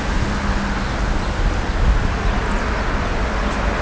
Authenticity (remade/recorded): recorded